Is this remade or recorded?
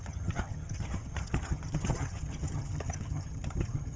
remade